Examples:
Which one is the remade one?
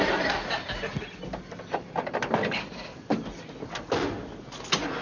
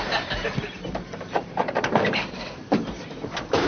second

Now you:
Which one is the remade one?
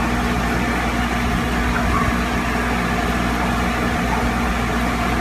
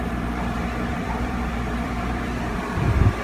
second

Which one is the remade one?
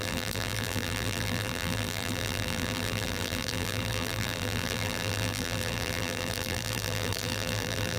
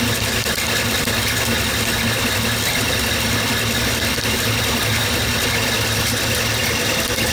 first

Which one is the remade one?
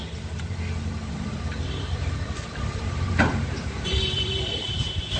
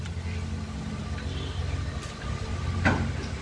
first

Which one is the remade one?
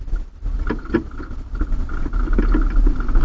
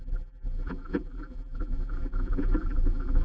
second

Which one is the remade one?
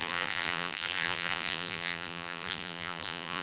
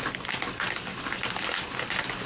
first